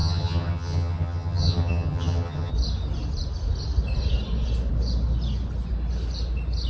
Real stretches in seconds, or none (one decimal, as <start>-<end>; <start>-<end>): 2.5-6.7